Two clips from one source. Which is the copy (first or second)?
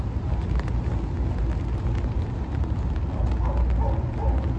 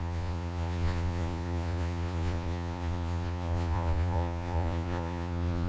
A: second